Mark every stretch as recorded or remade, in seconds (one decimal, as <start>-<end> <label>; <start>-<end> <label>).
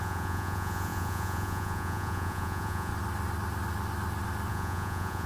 0.0-2.9 remade; 2.9-4.5 recorded; 4.5-5.3 remade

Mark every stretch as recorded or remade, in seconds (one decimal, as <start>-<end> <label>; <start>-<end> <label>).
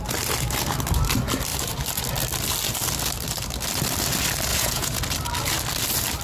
0.0-4.5 recorded; 4.5-5.0 remade; 5.0-6.2 recorded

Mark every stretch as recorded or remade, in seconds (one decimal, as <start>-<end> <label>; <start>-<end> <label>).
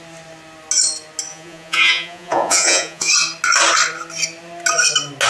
0.0-1.3 recorded; 1.3-3.1 remade; 3.1-5.3 recorded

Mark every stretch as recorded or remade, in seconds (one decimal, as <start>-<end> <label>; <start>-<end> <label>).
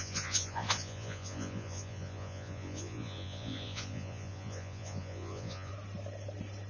0.0-5.7 remade; 5.7-6.7 recorded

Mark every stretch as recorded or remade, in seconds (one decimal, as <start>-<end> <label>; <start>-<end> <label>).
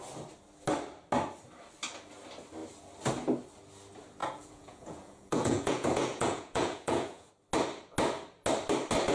0.0-4.2 recorded; 4.2-7.3 remade; 7.3-9.1 recorded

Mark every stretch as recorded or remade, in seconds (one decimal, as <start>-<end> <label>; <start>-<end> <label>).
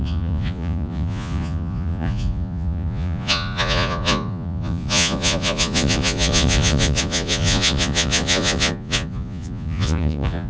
0.0-10.5 remade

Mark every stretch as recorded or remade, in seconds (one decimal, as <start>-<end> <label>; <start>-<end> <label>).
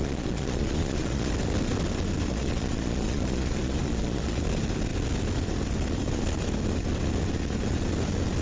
0.0-1.3 remade; 1.3-2.3 recorded; 2.3-4.4 remade; 4.4-8.4 recorded